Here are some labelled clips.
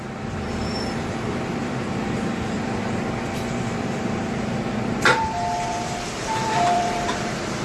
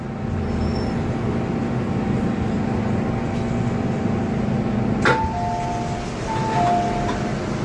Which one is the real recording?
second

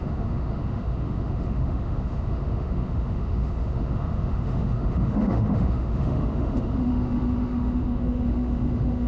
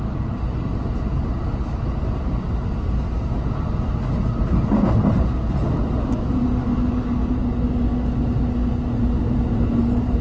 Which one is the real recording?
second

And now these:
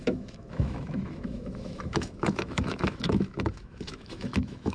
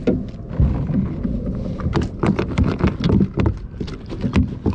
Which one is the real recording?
second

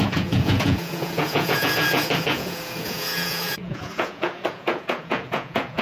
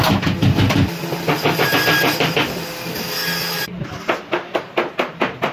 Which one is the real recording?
second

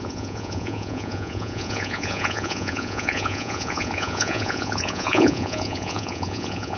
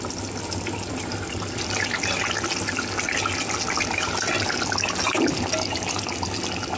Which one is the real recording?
second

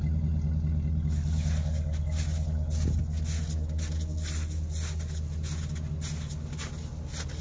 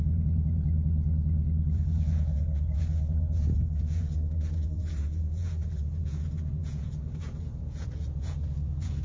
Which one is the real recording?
first